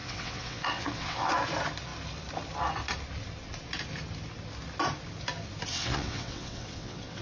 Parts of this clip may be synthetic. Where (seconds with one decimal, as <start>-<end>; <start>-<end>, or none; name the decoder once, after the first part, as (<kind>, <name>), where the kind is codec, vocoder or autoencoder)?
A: 0.0-1.3 (vocoder, WaveNeXt); 5.7-7.2